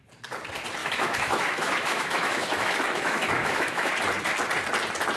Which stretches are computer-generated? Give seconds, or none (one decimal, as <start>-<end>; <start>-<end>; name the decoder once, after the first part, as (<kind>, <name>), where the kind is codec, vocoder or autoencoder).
0.8-3.9 (autoencoder, DAC-VAE)

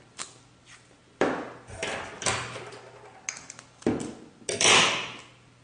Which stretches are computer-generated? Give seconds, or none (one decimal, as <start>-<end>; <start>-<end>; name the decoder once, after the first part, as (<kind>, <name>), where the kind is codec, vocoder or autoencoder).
none

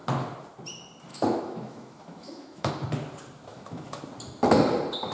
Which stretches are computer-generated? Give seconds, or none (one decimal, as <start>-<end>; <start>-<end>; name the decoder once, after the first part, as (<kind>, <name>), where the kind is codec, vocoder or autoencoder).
1.1-2.7 (autoencoder, DAC-VAE); 3.5-4.0

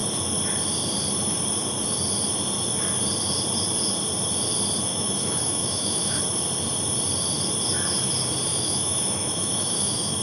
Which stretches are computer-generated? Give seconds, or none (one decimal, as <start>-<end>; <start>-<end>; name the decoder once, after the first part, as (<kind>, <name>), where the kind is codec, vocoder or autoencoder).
4.9-6.2 (autoencoder, DAC-VAE); 8.5-10.2

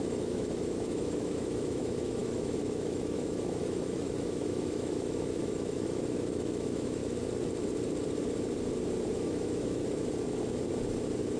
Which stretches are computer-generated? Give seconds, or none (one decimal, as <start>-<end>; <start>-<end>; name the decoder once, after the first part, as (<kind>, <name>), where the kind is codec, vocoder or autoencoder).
0.0-7.0 (autoencoder, DAC-VAE); 9.1-9.8

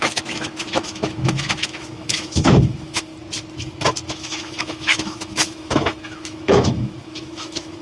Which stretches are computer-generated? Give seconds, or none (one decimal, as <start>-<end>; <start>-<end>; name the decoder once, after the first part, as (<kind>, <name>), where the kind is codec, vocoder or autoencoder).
0.0-3.1 (autoencoder, DAC-VAE); 4.1-7.8

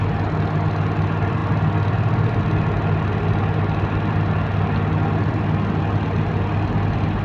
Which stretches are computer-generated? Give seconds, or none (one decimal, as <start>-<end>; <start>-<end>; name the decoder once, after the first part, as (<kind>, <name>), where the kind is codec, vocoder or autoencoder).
none